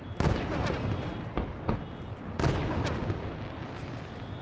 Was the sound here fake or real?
real